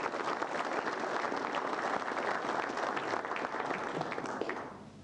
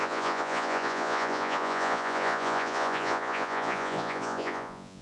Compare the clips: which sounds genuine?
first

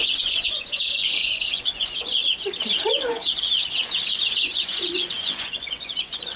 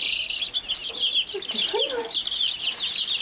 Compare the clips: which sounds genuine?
second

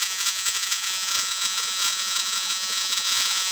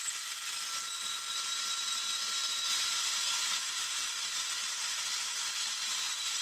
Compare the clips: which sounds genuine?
second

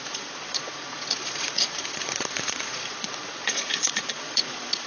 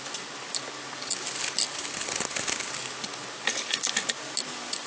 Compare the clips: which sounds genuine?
second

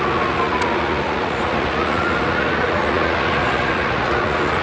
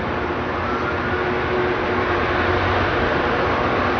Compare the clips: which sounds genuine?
second